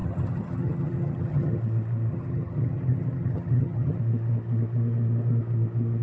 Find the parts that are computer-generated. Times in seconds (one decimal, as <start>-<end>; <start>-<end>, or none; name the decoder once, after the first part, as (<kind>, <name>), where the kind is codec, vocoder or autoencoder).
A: 0.0-1.6 (vocoder, HiFi-GAN); 2.1-4.0